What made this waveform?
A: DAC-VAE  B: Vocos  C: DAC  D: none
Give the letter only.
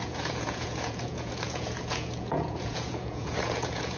B